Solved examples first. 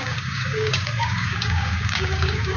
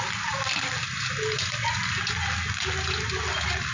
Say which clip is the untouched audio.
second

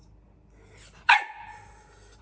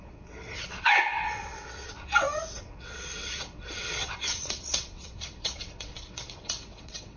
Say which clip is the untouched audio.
first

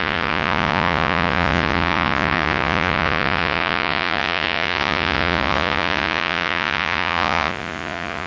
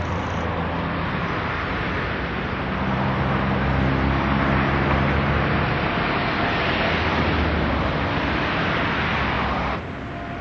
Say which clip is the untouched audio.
second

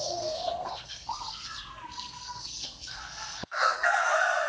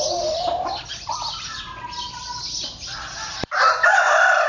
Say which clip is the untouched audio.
second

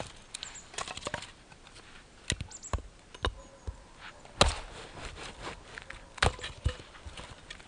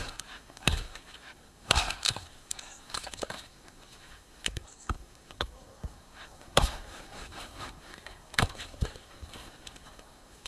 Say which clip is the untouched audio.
first